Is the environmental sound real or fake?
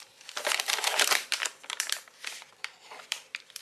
fake